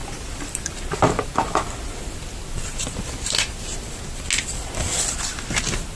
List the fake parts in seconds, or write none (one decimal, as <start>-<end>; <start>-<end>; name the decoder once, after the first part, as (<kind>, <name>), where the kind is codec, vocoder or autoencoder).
0.0-0.8 (vocoder, BigVGAN v2)

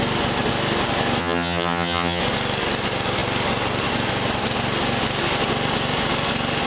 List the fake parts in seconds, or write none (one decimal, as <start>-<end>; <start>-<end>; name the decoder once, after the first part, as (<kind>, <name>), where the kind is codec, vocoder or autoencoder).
1.2-2.2 (vocoder, HiFi-GAN)

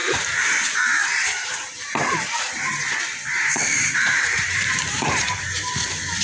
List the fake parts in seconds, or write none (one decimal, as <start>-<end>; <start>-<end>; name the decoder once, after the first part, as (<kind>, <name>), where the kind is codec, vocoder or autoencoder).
0.0-2.7 (vocoder, BigVGAN v2); 4.2-6.2

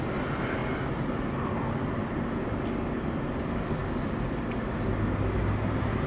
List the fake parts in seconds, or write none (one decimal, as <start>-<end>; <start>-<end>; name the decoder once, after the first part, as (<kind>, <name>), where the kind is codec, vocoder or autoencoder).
none

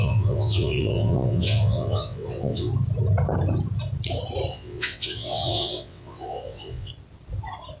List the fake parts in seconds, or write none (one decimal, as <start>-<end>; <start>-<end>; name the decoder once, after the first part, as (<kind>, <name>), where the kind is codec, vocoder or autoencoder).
0.0-2.7 (vocoder, WaveNeXt); 4.5-6.9

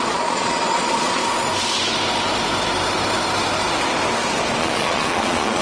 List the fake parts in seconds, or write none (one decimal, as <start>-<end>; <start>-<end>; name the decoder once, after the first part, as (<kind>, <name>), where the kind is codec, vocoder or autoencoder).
0.0-1.2 (vocoder, Vocos); 4.6-5.6

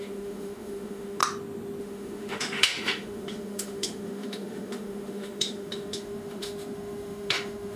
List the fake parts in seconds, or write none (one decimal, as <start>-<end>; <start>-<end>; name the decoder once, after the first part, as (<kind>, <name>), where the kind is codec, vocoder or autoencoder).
0.0-1.2 (autoencoder, DAC-VAE); 1.8-7.8

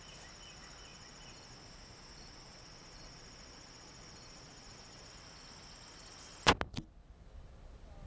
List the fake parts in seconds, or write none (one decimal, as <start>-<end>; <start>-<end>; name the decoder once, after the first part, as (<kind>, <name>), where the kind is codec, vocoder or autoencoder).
0.9-5.1 (vocoder, Vocos)